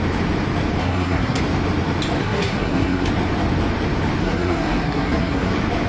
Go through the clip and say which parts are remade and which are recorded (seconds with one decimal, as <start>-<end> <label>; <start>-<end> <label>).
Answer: 0.0-0.8 recorded; 0.8-1.4 remade; 1.4-2.2 recorded; 2.2-3.1 remade; 3.1-4.2 recorded; 4.2-5.5 remade; 5.5-5.9 recorded